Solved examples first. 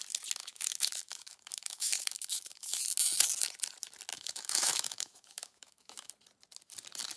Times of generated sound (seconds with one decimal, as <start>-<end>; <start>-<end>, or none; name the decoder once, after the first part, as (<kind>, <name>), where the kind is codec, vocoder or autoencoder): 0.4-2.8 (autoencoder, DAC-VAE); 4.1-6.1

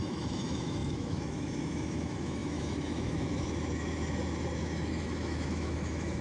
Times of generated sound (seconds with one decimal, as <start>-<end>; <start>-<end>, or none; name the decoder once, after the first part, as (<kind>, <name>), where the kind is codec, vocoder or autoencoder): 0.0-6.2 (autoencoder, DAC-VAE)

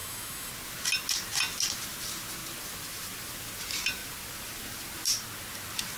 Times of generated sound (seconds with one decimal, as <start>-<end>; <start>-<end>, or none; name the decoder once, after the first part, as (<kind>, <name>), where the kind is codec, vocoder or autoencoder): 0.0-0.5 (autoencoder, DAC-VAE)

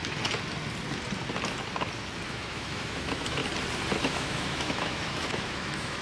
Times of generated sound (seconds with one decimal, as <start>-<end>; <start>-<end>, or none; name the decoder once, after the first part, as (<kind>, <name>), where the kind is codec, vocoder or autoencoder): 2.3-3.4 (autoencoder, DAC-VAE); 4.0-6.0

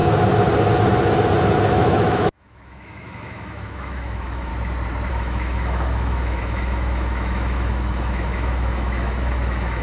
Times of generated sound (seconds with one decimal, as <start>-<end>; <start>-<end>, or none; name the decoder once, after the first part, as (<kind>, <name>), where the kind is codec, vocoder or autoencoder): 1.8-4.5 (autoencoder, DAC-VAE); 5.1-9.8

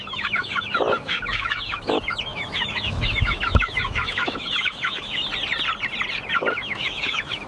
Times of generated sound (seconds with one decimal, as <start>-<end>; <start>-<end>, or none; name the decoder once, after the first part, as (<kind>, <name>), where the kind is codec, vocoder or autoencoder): 0.0-5.2 (autoencoder, DAC-VAE); 6.3-7.5